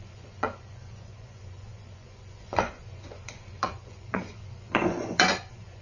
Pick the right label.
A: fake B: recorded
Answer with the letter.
A